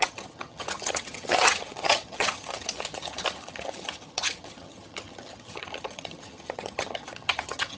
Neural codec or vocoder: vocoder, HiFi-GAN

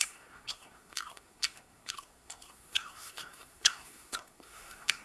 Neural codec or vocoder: codec, SNAC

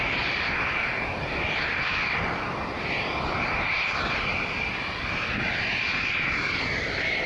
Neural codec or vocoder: none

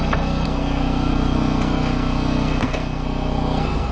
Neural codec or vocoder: codec, SNAC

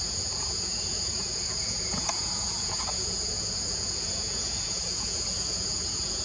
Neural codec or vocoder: vocoder, Vocos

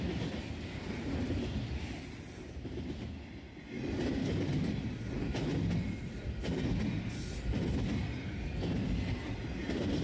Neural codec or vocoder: none